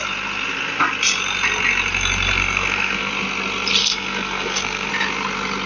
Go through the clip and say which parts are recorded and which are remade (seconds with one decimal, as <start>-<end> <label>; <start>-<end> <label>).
0.0-2.4 recorded; 2.4-3.1 remade; 3.1-3.8 recorded; 3.8-4.9 remade; 4.9-5.7 recorded